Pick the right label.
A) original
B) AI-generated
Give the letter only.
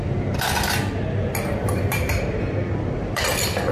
A